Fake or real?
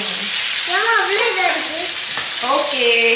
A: real